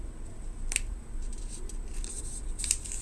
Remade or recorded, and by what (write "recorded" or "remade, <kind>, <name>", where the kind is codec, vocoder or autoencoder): remade, vocoder, BigVGAN v2